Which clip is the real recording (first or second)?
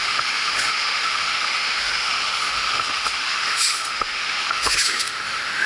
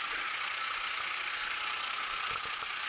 second